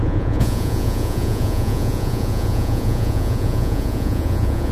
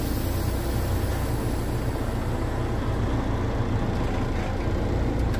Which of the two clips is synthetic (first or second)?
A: first